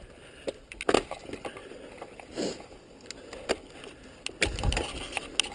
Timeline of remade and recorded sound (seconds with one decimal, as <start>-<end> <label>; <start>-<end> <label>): 0.0-5.5 recorded